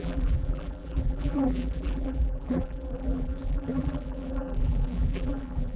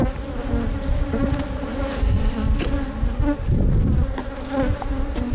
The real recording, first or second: second